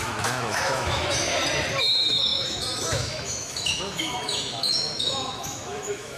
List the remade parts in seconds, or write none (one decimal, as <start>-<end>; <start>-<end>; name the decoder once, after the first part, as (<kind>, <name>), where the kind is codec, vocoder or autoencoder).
0.0-1.3 (autoencoder, DAC-VAE); 1.8-6.2